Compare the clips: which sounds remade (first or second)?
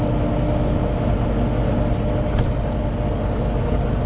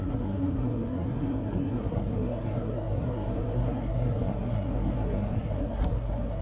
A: second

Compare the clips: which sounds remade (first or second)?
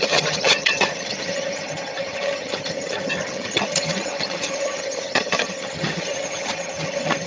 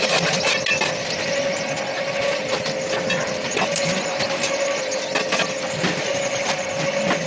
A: first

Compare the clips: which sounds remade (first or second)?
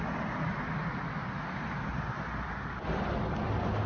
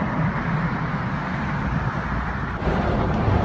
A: second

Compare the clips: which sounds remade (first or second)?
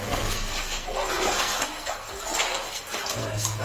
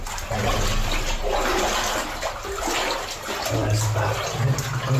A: first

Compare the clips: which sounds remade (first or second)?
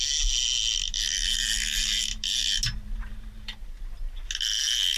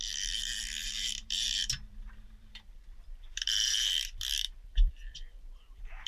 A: second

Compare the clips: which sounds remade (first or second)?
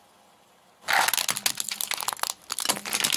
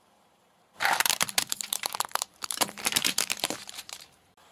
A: second